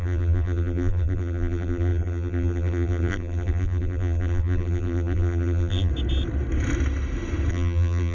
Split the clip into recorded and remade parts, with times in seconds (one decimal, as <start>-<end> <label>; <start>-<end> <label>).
0.0-5.9 remade; 5.9-7.5 recorded; 7.5-8.1 remade